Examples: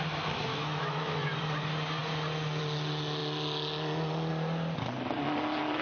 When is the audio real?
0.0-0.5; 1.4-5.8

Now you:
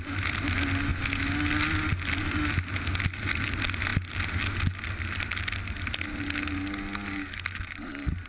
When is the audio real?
0.0-8.3